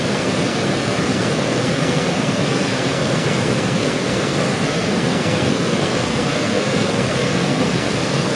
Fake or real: fake